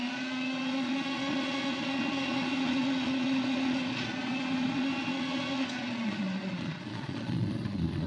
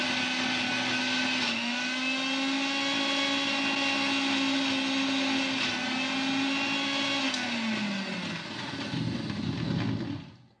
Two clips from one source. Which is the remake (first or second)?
first